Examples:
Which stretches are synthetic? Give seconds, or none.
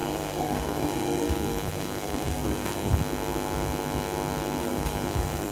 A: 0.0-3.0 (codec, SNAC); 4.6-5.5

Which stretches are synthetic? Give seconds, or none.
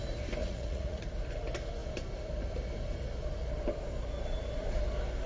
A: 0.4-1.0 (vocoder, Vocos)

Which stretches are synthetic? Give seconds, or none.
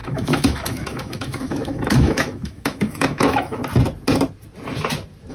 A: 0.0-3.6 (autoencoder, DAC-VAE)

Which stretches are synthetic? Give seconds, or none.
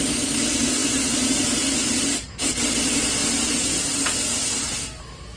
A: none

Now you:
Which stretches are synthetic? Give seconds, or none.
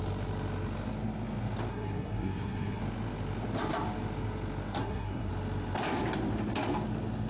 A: 1.7-2.8 (codec, SNAC); 4.8-5.3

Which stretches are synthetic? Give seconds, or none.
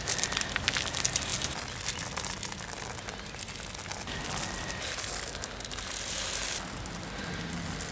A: none